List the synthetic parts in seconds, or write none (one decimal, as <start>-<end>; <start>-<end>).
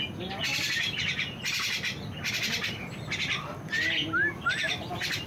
0.5-2.9